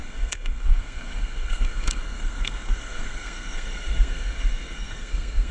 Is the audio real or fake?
fake